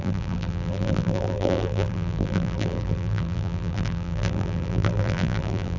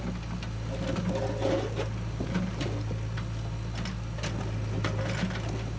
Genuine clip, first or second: second